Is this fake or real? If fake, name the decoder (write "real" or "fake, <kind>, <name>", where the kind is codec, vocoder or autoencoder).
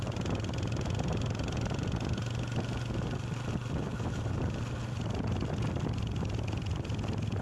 real